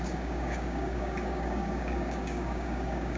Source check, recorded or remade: remade